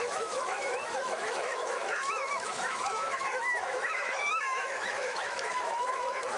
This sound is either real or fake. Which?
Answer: fake